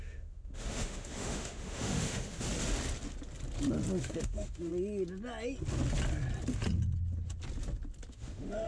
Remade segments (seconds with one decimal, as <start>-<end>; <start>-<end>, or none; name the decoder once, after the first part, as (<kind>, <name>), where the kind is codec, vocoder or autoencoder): 0.0-2.5 (autoencoder, DAC-VAE); 4.0-4.7; 8.1-8.7